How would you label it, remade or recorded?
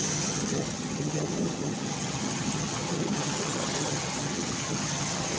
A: remade